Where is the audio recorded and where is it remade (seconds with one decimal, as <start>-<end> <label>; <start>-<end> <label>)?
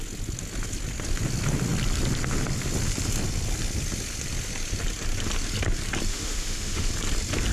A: 0.0-6.1 recorded; 6.1-6.9 remade; 6.9-7.5 recorded